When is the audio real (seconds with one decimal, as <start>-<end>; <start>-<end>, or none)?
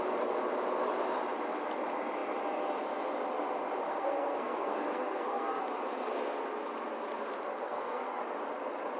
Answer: 0.0-3.8; 5.6-7.5; 8.2-9.0